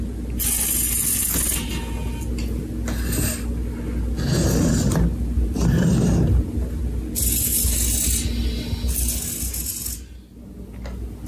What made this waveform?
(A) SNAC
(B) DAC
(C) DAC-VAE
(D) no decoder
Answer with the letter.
D